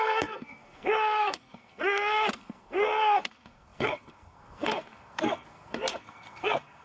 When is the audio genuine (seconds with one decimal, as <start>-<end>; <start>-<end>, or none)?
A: none